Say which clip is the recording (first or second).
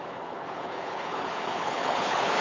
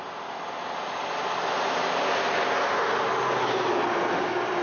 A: second